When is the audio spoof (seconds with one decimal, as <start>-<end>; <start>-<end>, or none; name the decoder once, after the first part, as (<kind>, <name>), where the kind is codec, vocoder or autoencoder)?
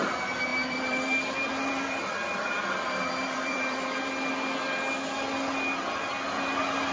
0.5-4.1 (vocoder, BigVGAN v2)